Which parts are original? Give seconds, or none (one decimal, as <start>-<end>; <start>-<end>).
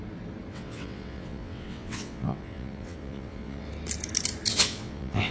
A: 0.0-0.5; 3.7-4.5